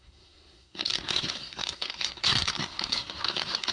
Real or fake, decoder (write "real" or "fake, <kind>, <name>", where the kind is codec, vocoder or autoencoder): fake, codec, SNAC